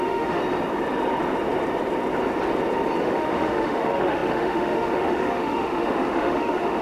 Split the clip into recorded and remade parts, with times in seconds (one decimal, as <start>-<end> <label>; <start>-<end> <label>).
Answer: 0.0-0.4 remade; 0.4-3.0 recorded; 3.0-6.8 remade